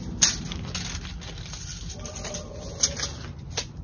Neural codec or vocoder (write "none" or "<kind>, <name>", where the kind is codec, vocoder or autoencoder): none